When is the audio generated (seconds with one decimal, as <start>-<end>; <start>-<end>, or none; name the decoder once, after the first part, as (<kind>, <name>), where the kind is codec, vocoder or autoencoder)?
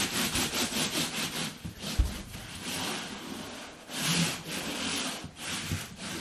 0.0-6.2 (vocoder, BigVGAN v2)